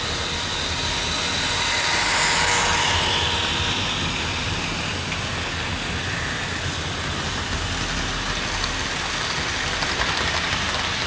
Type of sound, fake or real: real